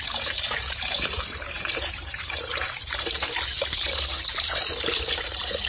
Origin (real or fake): fake